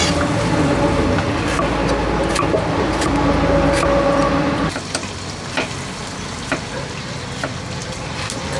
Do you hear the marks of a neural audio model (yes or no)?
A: no